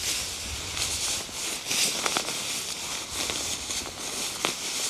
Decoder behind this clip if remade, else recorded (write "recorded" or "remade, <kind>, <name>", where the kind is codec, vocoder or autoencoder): recorded